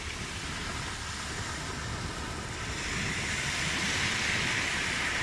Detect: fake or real real